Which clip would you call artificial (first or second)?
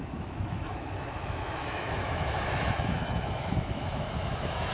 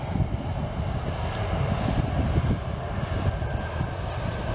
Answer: first